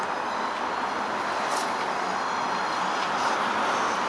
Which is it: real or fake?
real